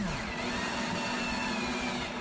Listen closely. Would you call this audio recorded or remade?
recorded